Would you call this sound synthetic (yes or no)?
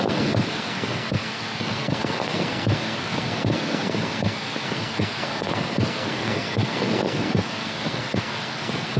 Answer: yes